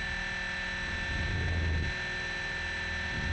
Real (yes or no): yes